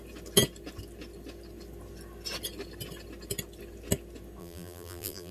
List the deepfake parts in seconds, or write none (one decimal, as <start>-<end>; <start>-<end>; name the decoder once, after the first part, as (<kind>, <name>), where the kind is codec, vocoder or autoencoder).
4.4-5.3 (vocoder, BigVGAN v2)